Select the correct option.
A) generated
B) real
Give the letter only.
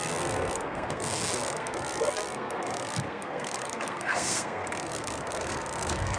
A